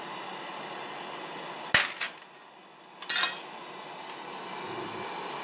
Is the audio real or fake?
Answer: real